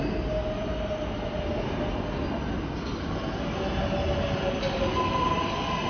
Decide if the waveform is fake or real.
real